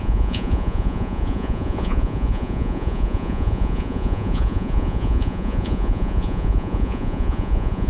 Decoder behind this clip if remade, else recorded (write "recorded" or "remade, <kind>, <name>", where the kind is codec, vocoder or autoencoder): remade, vocoder, Vocos